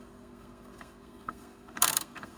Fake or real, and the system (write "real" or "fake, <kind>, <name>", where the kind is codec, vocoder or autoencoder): fake, codec, SNAC